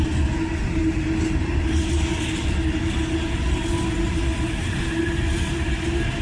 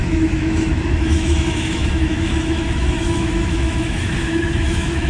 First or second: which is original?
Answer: first